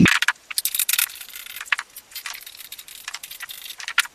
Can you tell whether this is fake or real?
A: real